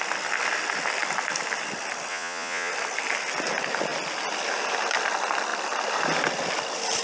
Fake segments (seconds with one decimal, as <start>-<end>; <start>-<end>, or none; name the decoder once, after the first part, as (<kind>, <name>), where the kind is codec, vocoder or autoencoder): 2.1-2.7 (vocoder, Vocos)